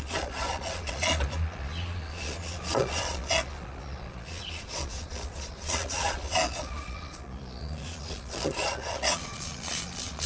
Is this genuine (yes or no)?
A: no